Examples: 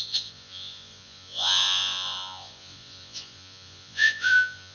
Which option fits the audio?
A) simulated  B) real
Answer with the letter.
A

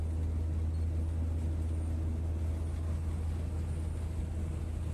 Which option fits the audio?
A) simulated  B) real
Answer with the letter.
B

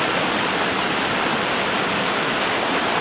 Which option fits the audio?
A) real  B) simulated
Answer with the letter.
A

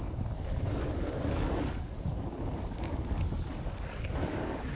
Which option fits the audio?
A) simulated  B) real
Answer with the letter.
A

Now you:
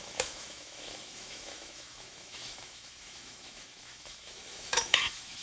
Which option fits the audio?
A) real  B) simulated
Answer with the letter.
B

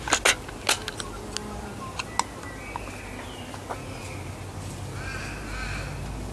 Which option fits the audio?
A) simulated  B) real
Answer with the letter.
B